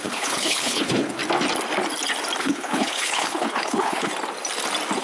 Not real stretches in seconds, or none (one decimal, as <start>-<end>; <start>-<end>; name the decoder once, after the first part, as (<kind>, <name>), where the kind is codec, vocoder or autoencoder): 0.0-1.2 (codec, HILCodec); 2.4-4.1